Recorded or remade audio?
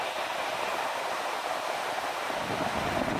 recorded